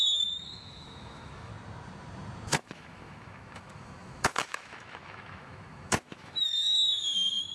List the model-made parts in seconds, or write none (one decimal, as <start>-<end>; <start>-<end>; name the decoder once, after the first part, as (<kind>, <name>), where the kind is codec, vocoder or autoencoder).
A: 0.0-1.5 (autoencoder, DAC-VAE); 2.6-7.5